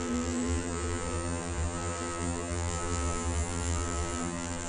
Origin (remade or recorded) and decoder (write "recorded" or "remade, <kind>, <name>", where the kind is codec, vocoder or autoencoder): remade, vocoder, BigVGAN v2